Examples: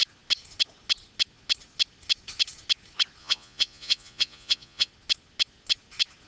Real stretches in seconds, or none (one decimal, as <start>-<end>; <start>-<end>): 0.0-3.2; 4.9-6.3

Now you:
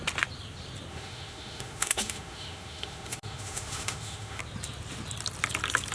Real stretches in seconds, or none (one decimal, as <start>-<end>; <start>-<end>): 0.0-0.9; 4.4-5.9

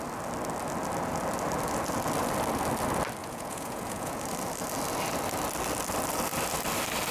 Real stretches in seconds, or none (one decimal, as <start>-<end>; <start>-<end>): 0.0-3.2; 4.2-7.1

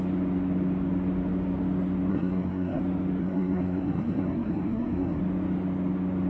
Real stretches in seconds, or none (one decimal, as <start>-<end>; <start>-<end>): 0.0-2.1; 2.8-3.2; 5.2-6.3

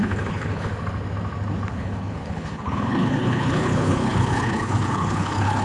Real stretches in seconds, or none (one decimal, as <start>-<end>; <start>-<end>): 0.7-1.7

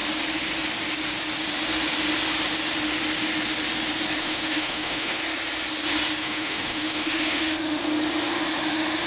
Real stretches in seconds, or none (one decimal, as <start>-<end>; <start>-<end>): 0.0-4.2; 5.2-6.2; 7.8-8.4